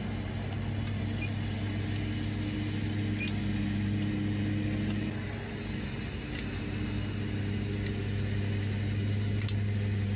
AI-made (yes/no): no